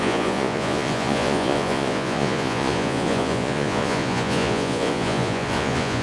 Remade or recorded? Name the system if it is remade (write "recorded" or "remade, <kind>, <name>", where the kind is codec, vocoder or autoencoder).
remade, vocoder, Vocos